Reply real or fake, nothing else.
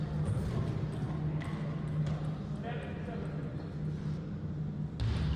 real